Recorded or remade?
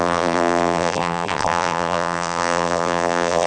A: remade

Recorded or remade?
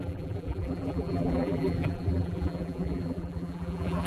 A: remade